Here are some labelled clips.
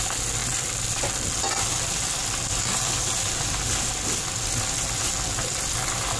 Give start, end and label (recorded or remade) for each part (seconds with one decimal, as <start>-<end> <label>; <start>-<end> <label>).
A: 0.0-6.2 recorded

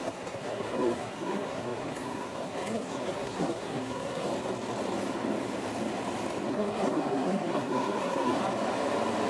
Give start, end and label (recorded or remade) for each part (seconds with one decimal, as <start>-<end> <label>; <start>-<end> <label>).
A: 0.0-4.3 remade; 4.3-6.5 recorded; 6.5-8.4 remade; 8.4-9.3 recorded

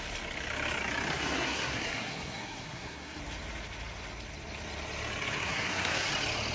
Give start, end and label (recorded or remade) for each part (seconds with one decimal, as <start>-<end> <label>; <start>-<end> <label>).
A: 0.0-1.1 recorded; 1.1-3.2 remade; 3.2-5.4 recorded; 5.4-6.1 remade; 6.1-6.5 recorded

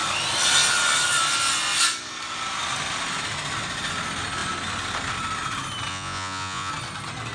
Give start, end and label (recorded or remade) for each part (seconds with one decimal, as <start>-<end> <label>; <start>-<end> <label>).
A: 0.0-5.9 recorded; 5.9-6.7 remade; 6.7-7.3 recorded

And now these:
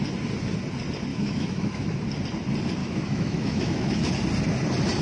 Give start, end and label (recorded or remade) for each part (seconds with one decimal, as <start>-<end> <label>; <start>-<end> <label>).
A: 0.0-1.1 recorded; 1.1-2.0 remade; 2.0-2.8 recorded; 2.8-4.1 remade; 4.1-5.0 recorded

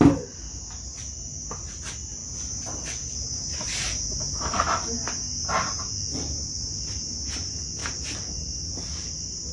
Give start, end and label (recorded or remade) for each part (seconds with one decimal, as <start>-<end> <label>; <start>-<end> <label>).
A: 0.0-9.5 recorded